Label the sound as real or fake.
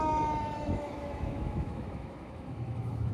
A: fake